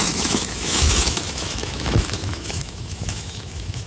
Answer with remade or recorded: remade